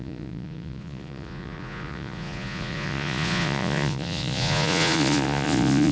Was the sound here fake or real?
fake